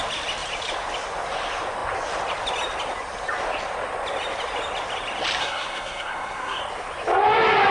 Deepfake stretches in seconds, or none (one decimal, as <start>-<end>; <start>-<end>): 5.4-6.6

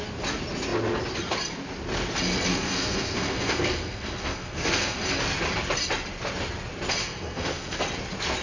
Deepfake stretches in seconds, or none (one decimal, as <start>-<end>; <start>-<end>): 2.5-5.0; 7.0-7.8

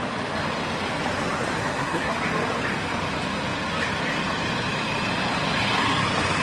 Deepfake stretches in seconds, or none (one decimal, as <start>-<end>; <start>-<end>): 1.6-2.1